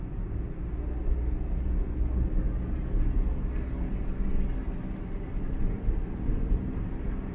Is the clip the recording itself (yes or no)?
yes